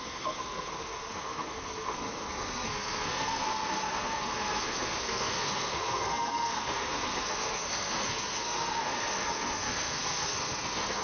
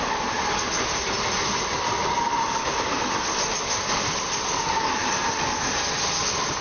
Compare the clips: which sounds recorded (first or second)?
second